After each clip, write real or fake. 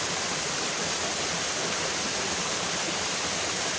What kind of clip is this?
real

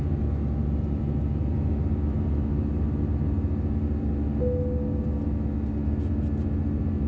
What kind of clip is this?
real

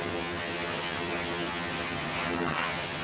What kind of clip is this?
fake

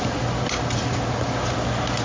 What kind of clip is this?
real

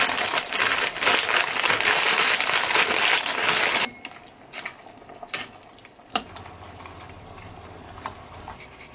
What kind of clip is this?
real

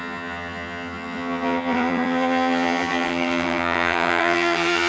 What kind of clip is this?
fake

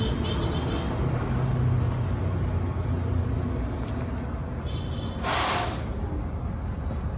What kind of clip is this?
real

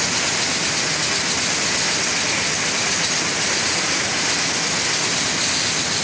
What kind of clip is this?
real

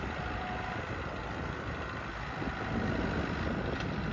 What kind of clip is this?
real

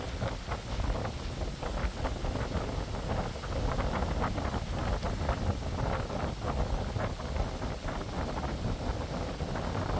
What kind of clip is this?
real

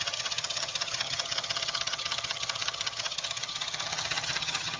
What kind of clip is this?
fake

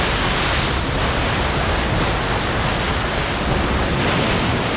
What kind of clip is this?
real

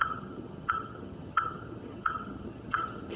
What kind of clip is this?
fake